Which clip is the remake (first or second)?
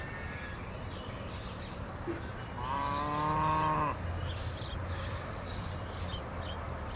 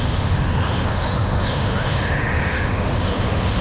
second